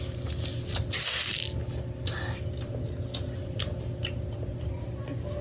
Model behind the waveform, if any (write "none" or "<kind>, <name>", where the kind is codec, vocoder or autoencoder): none